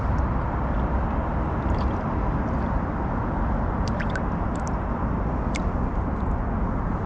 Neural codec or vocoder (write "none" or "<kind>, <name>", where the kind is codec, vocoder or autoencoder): none